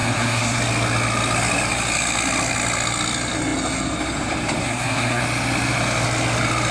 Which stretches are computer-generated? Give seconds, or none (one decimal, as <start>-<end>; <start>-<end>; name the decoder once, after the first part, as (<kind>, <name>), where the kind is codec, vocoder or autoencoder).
0.0-0.6 (codec, SNAC); 4.6-5.2